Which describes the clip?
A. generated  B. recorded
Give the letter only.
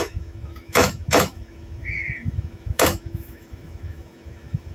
A